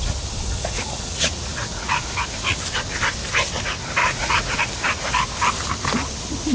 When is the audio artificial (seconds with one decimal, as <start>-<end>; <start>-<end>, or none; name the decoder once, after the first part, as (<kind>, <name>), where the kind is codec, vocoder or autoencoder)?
0.6-2.0 (vocoder, Vocos); 4.0-4.6